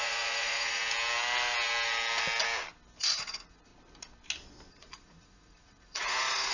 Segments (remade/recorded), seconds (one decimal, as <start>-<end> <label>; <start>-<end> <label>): 0.0-0.8 remade; 0.8-3.0 recorded; 3.0-3.7 remade; 3.7-4.7 recorded; 4.7-6.5 remade